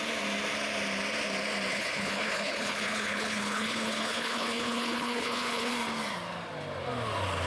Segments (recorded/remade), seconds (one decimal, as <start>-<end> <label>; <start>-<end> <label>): 0.0-1.7 recorded; 1.7-5.7 remade; 5.7-7.5 recorded